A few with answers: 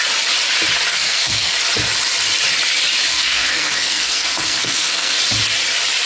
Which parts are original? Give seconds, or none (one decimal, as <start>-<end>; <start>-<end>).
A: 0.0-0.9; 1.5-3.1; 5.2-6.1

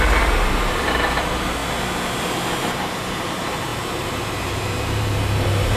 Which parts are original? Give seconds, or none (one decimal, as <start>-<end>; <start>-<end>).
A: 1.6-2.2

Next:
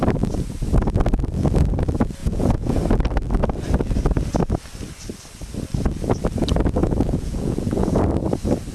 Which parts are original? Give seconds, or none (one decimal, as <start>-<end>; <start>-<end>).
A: 0.0-2.2; 2.8-6.8; 8.0-8.7

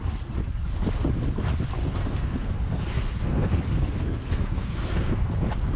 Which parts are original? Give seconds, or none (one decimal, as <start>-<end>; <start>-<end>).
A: 0.0-1.8; 5.3-5.8